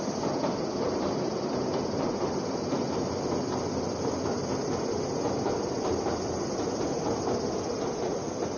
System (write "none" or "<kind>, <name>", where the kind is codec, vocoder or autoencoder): none